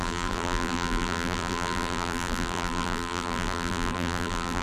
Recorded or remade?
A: remade